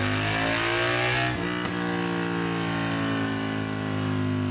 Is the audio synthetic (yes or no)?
no